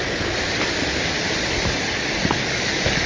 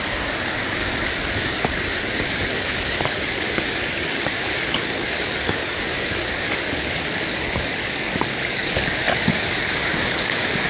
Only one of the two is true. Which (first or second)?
first